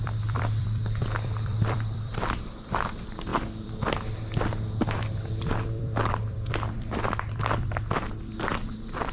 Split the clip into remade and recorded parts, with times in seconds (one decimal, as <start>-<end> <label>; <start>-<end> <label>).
0.0-9.1 remade